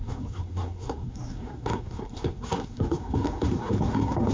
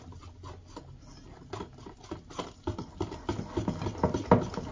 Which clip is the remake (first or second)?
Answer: first